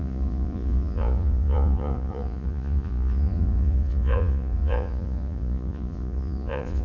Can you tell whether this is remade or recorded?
remade